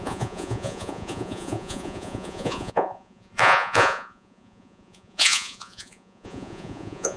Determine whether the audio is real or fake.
fake